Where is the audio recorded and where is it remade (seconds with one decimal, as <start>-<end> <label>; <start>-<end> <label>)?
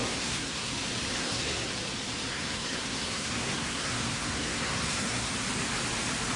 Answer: 0.0-0.7 remade; 0.7-1.2 recorded; 1.2-1.7 remade; 1.7-2.3 recorded; 2.3-5.3 remade; 5.3-6.4 recorded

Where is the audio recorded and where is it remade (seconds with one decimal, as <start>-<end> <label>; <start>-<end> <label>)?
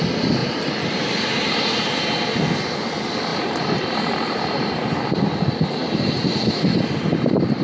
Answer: 0.0-0.4 recorded; 0.4-2.0 remade; 2.0-3.3 recorded; 3.3-5.0 remade; 5.0-5.8 recorded; 5.8-6.8 remade; 6.8-7.6 recorded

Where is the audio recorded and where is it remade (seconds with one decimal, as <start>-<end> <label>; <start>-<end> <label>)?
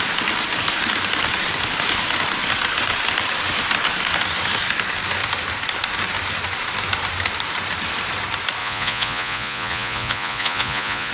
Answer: 0.0-8.6 recorded; 8.6-11.1 remade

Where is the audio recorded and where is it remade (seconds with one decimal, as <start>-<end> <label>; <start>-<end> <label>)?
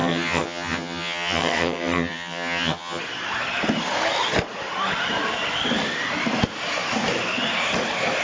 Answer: 0.0-3.0 remade; 3.0-8.2 recorded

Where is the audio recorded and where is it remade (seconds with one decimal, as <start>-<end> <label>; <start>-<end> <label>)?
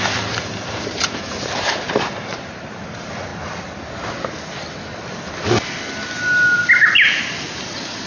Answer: 0.0-3.3 remade; 3.3-7.1 recorded; 7.1-8.1 remade